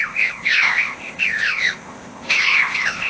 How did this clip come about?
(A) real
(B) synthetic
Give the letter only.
B